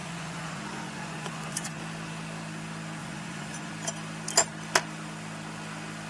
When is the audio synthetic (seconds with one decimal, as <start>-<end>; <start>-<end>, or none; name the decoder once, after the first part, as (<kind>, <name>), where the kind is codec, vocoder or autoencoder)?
0.0-1.8 (vocoder, Vocos); 3.0-3.7